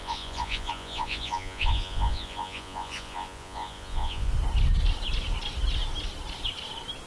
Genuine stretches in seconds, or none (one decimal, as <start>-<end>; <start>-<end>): 4.3-7.1